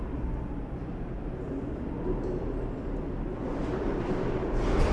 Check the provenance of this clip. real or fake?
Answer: real